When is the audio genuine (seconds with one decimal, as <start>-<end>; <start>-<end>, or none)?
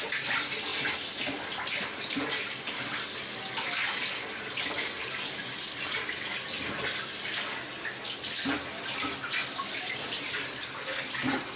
0.0-11.6